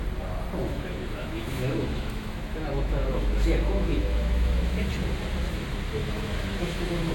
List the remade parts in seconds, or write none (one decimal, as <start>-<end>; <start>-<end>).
0.6-4.9; 6.0-7.1